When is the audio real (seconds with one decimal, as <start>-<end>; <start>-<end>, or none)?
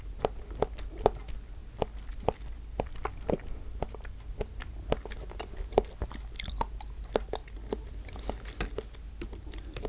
0.0-2.9; 3.6-9.9